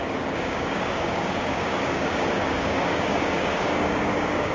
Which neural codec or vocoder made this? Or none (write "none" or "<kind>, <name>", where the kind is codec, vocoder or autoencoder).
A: codec, DAC